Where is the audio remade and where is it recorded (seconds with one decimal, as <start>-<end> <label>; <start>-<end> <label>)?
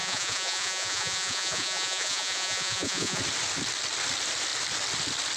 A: 0.0-3.2 remade; 3.2-5.4 recorded